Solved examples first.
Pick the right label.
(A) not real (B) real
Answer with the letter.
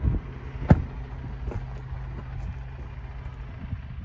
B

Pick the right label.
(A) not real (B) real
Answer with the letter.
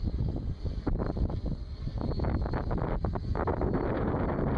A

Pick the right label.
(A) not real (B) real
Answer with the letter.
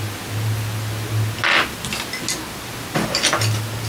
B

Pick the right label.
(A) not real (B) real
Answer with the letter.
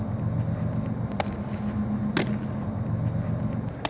B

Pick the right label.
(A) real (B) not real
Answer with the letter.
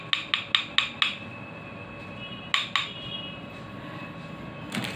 A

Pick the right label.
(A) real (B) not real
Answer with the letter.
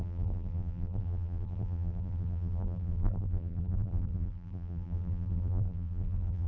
B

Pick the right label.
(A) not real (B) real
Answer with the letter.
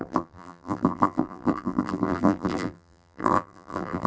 A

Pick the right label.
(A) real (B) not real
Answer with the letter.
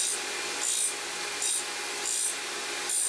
A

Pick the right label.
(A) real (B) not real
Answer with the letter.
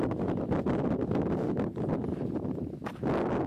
A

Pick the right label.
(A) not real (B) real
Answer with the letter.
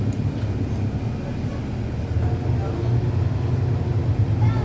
B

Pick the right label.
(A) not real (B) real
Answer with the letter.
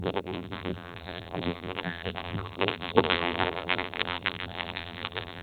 A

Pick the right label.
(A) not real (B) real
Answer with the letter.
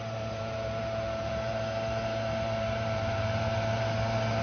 A